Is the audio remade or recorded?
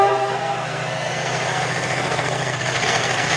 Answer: remade